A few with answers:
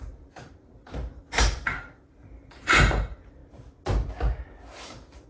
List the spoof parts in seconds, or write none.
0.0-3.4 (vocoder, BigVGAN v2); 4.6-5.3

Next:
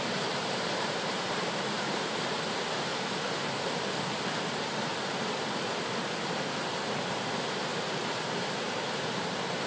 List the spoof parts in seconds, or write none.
0.0-2.9 (vocoder, BigVGAN v2); 7.1-7.7; 8.2-9.7

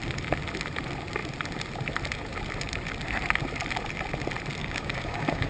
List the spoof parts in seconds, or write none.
4.6-5.5 (codec, DAC)

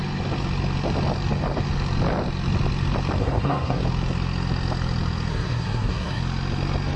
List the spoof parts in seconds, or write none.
3.2-3.8 (codec, SNAC); 5.3-6.2

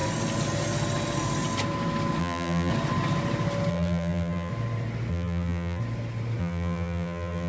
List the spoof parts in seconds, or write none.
2.2-2.7 (vocoder, BigVGAN v2); 3.7-4.5; 5.1-5.8; 6.4-7.5

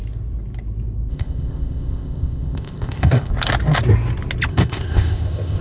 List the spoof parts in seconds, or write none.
1.1-3.3 (codec, ZipCodec); 4.5-5.6

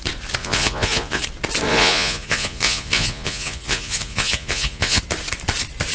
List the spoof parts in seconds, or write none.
0.4-1.2 (vocoder, Vocos); 1.7-5.0